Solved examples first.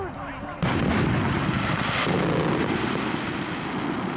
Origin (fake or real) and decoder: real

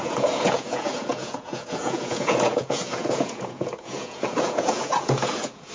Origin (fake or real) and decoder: fake, vocoder, Vocos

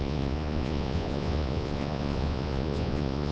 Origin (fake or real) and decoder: fake, vocoder, Vocos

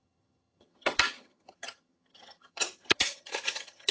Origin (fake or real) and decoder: fake, vocoder, HiFi-GAN